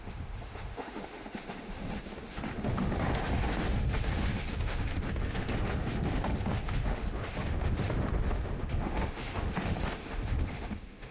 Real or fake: fake